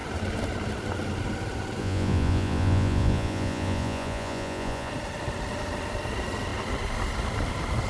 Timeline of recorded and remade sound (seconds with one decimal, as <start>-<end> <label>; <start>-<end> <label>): 0.0-1.8 recorded; 1.8-4.9 remade; 4.9-7.9 recorded